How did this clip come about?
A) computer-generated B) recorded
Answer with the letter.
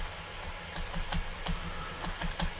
B